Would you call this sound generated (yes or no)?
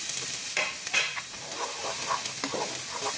no